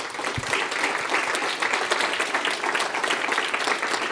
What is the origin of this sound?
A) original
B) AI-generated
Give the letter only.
A